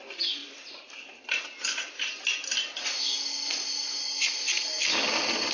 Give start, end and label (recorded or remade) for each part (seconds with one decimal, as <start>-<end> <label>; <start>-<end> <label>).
0.0-5.5 recorded